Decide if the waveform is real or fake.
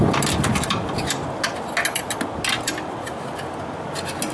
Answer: real